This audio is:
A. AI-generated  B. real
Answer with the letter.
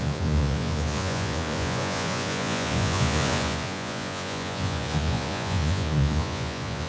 A